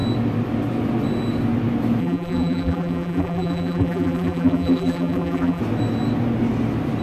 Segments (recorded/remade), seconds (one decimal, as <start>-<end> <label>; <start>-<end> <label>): 0.0-2.0 recorded; 2.0-5.6 remade; 5.6-7.0 recorded